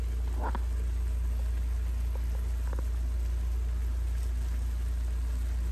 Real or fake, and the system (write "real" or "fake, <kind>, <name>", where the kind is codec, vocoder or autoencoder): real